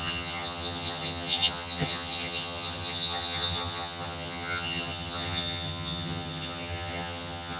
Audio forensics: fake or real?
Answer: fake